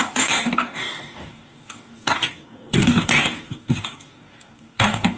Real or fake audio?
fake